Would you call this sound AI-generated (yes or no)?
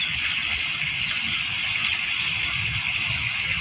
no